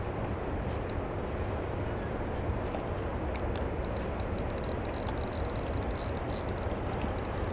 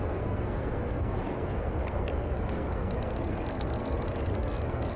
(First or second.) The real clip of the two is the first